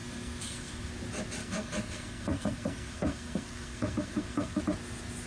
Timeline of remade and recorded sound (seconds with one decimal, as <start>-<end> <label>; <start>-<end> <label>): 0.0-0.9 remade; 0.9-1.4 recorded; 1.4-4.6 remade; 4.6-5.3 recorded

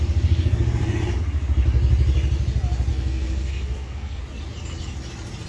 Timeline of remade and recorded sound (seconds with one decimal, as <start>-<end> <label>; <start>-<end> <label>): 0.0-2.9 recorded; 2.9-4.2 remade; 4.2-5.5 recorded

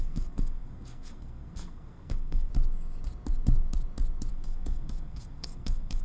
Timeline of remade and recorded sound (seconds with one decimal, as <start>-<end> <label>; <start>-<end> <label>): 0.0-2.5 remade; 2.5-4.3 recorded; 4.3-6.0 remade

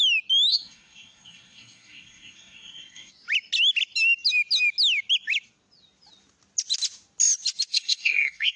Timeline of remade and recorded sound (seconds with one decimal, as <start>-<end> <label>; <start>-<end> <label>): 0.0-0.5 recorded; 0.5-3.1 remade; 3.1-7.7 recorded; 7.7-8.6 remade

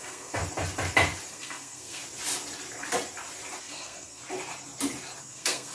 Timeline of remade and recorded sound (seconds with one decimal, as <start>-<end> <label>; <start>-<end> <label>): 0.0-0.4 remade; 0.4-1.3 recorded; 1.3-2.0 remade; 2.0-3.6 recorded; 3.6-4.2 remade; 4.2-5.2 recorded; 5.2-5.7 remade

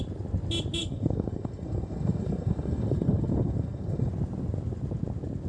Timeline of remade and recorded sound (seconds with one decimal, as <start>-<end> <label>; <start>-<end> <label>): 0.0-0.8 recorded; 0.8-4.1 remade; 4.1-5.5 recorded